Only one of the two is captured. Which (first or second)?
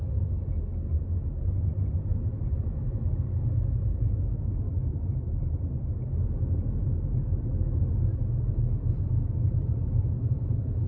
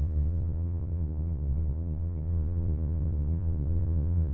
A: first